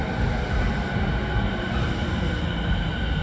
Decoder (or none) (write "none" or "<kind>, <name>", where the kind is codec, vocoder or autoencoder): none